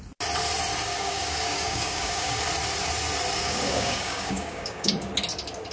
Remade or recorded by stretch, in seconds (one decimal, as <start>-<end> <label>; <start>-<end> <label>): 0.0-0.9 recorded; 0.9-2.4 remade; 2.4-3.4 recorded; 3.4-4.9 remade; 4.9-5.7 recorded